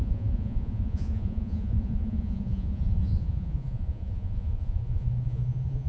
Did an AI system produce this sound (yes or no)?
yes